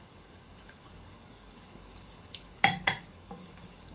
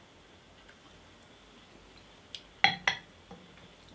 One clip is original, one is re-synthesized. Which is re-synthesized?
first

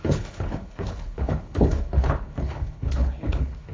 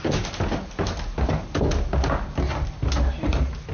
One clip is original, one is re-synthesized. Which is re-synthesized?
first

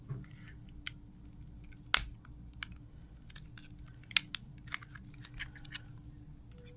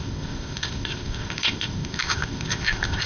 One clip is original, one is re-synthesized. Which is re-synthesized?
second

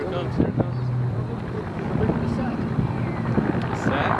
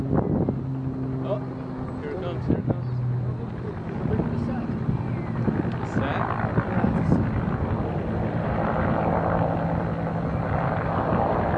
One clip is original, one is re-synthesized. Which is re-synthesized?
first